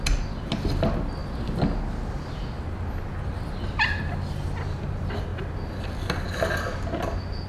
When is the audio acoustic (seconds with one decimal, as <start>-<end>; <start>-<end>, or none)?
0.0-7.5

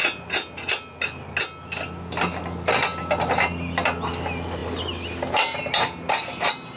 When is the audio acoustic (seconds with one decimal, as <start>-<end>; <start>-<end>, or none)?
0.0-6.8